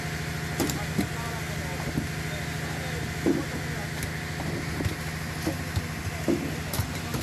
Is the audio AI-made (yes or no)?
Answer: no